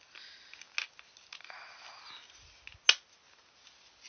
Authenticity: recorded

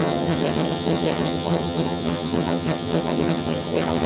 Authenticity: remade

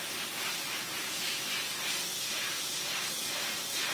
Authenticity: recorded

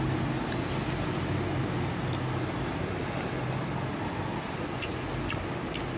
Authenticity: recorded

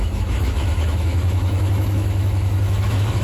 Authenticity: remade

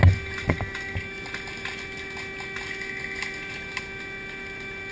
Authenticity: recorded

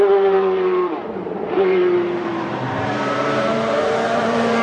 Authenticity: remade